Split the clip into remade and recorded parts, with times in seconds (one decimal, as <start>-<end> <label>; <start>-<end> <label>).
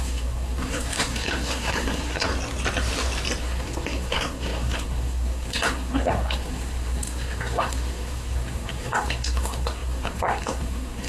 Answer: 0.0-2.3 remade; 2.3-3.4 recorded; 3.4-11.1 remade